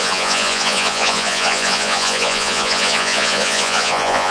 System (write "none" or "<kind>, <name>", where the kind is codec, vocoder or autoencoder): vocoder, Vocos